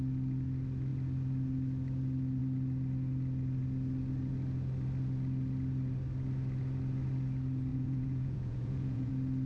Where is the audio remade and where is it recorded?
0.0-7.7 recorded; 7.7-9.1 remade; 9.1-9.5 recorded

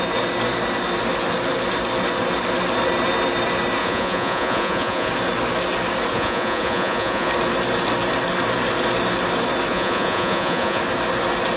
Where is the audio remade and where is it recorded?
0.0-3.8 recorded; 3.8-5.1 remade; 5.1-6.1 recorded; 6.1-7.3 remade; 7.3-9.7 recorded; 9.7-10.8 remade; 10.8-11.6 recorded

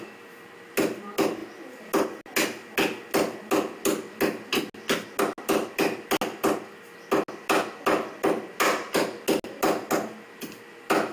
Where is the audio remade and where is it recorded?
0.0-11.1 recorded

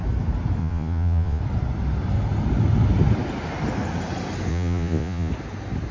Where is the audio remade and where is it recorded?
0.0-0.6 recorded; 0.6-1.4 remade; 1.4-4.5 recorded; 4.5-5.3 remade; 5.3-5.9 recorded

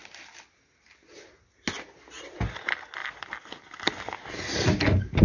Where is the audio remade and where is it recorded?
0.0-5.2 recorded

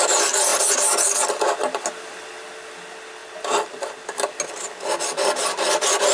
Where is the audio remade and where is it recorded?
0.0-6.1 recorded

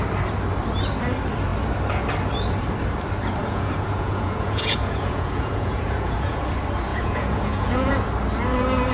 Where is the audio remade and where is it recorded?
0.0-3.4 recorded; 3.4-6.4 remade; 6.4-6.9 recorded; 6.9-8.0 remade; 8.0-8.9 recorded

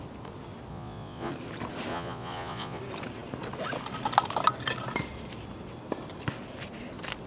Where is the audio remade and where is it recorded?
0.0-0.7 recorded; 0.7-1.3 remade; 1.3-1.9 recorded; 1.9-2.8 remade; 2.8-7.3 recorded